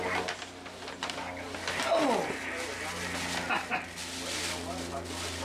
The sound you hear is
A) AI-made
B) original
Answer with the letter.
B